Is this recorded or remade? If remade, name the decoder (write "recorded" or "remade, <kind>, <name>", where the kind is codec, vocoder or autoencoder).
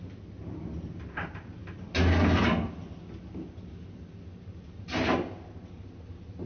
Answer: recorded